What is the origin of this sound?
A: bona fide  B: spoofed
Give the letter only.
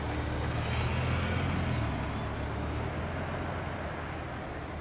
A